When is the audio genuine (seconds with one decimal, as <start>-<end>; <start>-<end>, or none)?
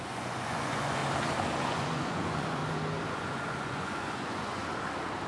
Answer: 1.0-1.6; 2.6-3.1; 4.6-5.3